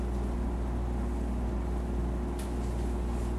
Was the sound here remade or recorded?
recorded